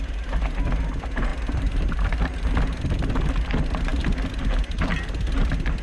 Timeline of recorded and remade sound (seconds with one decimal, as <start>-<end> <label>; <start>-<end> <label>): 0.0-1.3 recorded; 1.3-2.6 remade; 2.6-5.8 recorded